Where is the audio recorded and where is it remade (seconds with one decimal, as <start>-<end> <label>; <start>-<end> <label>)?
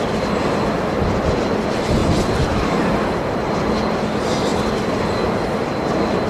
0.0-6.3 recorded